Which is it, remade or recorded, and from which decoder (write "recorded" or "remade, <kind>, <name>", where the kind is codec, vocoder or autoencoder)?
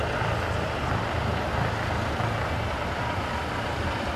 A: recorded